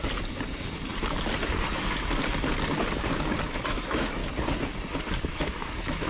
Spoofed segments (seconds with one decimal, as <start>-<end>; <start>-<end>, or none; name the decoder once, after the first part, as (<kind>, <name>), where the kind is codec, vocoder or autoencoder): 3.7-4.2 (autoencoder, DAC-VAE); 5.3-6.1